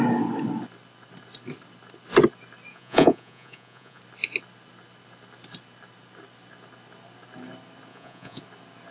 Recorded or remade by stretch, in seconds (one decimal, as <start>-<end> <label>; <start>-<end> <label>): 0.0-2.7 recorded; 2.7-4.0 remade; 4.0-7.9 recorded; 7.9-8.4 remade; 8.4-8.9 recorded